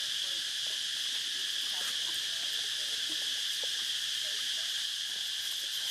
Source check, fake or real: real